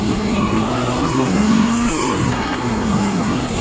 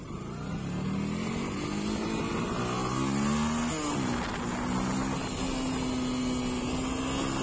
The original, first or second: second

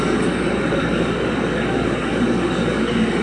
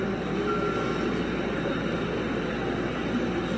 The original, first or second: second